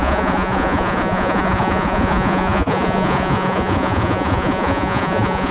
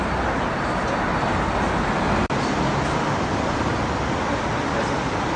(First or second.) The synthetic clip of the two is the first